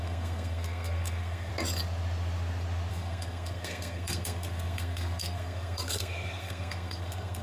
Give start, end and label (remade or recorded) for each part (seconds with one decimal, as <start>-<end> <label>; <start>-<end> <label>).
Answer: 0.0-1.5 remade; 1.5-2.9 recorded; 2.9-7.4 remade